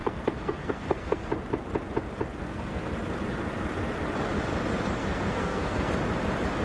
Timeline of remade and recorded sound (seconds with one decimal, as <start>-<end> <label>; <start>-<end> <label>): 0.0-1.3 remade; 1.3-2.4 recorded; 2.4-2.9 remade; 2.9-5.0 recorded; 5.0-5.9 remade; 5.9-6.6 recorded